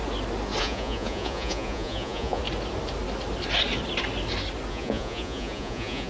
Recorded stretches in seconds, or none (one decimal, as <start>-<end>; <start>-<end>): 0.0-0.6; 2.4-4.7